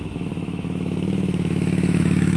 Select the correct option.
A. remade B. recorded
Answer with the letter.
A